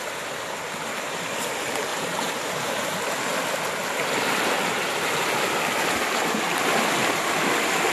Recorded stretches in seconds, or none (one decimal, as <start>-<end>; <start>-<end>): 0.0-1.9; 2.8-7.9